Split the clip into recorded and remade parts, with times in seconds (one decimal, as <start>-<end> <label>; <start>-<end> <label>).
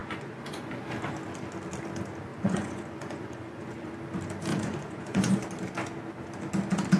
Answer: 0.0-0.7 remade; 0.7-2.3 recorded; 2.3-3.9 remade; 3.9-4.5 recorded; 4.5-5.3 remade; 5.3-7.0 recorded